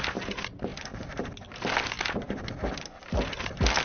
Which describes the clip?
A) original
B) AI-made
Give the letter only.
A